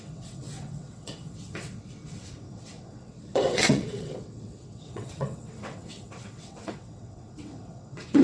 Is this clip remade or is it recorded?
remade